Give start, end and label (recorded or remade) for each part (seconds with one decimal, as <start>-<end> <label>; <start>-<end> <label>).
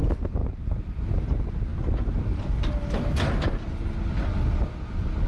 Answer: 0.0-0.4 recorded; 0.4-1.0 remade; 1.0-5.3 recorded